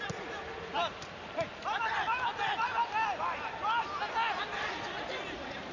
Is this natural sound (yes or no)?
yes